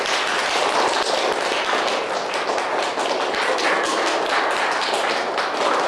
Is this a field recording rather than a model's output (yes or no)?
yes